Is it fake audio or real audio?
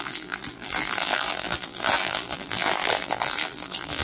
fake